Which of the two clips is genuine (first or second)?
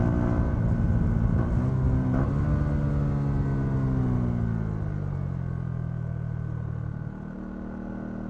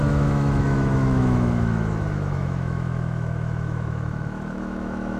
first